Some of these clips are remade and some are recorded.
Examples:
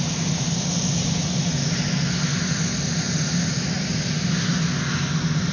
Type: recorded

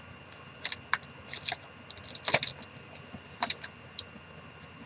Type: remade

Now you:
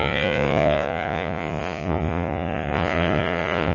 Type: remade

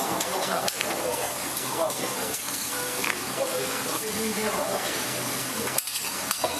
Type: remade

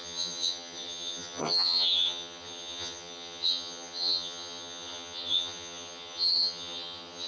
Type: remade